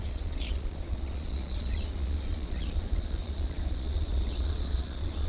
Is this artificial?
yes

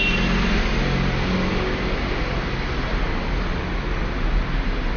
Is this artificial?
no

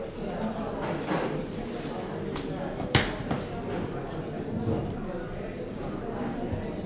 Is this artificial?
no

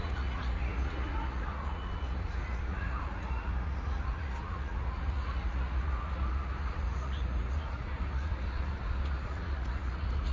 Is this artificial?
yes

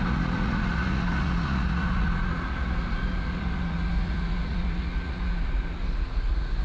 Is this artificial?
yes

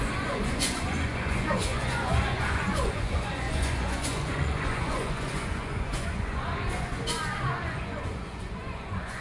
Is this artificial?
yes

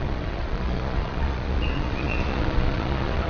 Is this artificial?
yes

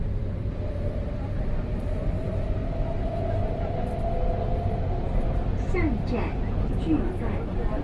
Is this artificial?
no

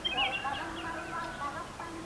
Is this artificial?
no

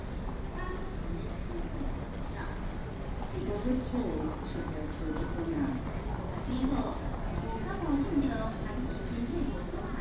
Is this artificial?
no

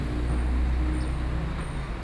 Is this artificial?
no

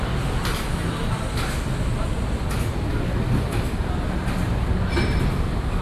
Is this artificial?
no